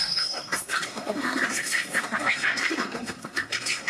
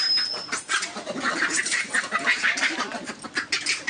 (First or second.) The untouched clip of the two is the second